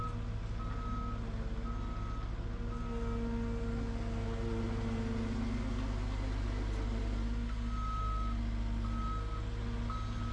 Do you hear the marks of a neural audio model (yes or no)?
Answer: no